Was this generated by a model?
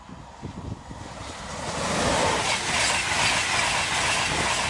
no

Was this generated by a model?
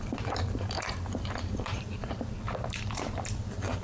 yes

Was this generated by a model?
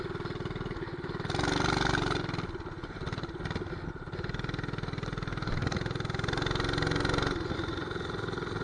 no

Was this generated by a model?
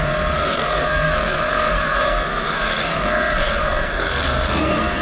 yes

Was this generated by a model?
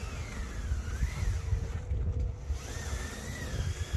no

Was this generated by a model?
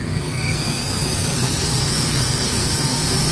yes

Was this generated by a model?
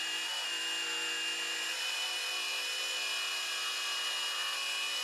yes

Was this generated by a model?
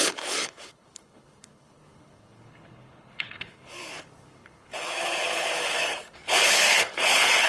yes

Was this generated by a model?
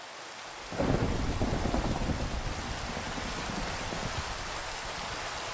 no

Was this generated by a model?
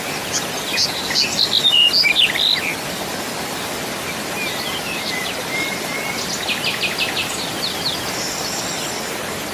no